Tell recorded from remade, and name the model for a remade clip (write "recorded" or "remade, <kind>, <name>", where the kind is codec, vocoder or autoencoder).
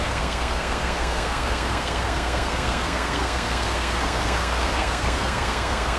remade, codec, SNAC